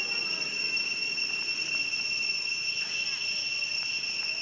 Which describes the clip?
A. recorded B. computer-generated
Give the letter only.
A